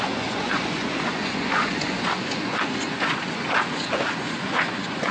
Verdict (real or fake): fake